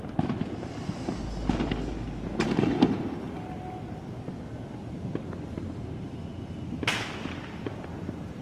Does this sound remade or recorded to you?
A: recorded